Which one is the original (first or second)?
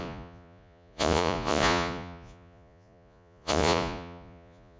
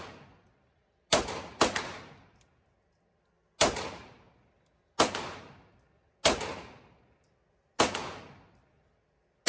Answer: second